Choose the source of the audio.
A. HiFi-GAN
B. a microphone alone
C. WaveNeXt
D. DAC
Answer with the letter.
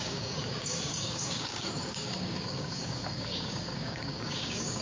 D